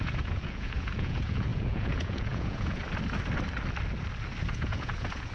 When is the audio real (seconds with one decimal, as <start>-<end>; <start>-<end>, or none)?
2.8-4.5